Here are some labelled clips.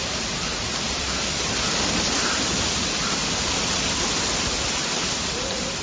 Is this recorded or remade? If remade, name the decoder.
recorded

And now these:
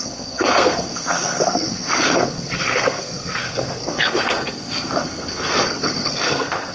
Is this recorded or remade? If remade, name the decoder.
remade, codec, SNAC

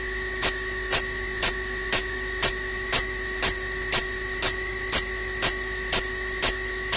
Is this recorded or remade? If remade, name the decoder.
recorded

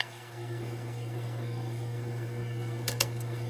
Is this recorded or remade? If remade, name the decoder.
remade, codec, SNAC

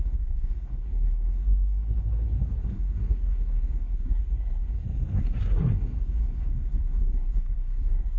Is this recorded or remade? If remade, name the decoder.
remade, codec, SNAC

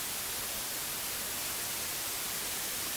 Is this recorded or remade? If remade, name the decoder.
recorded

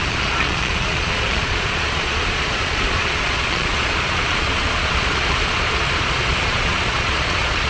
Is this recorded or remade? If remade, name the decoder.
remade, vocoder, Vocos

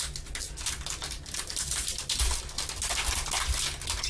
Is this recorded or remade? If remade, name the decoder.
recorded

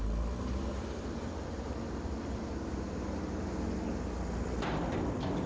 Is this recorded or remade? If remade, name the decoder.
recorded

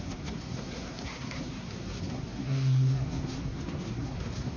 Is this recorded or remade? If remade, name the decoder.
remade, codec, SNAC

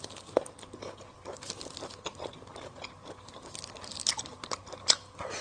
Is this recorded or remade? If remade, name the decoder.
recorded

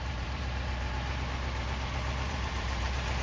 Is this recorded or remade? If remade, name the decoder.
remade, vocoder, BigVGAN v2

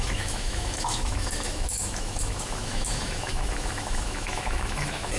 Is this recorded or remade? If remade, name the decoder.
remade, autoencoder, DAC-VAE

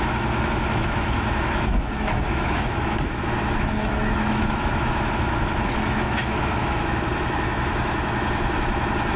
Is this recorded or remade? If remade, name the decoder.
remade, autoencoder, DAC-VAE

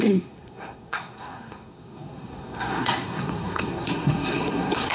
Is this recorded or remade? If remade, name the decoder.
remade, codec, SNAC